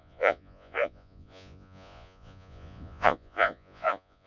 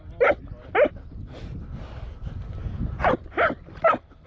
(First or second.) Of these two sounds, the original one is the second